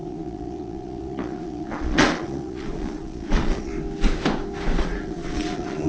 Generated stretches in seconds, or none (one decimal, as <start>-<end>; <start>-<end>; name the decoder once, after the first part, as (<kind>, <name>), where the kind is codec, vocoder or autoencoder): 0.0-3.7 (vocoder, Vocos); 4.8-5.9